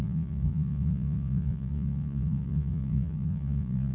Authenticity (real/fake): fake